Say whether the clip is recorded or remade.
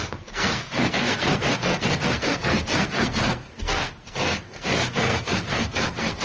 remade